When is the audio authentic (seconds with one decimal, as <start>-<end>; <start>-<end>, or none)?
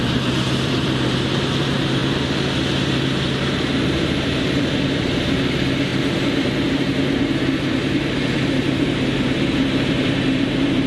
2.0-3.8